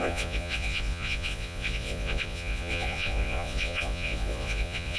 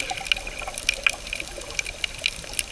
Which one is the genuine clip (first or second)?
second